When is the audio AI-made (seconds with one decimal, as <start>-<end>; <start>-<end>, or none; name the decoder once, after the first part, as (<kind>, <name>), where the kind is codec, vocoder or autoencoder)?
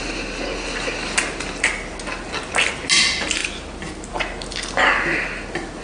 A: none